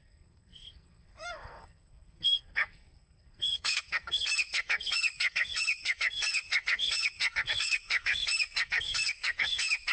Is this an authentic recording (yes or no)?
no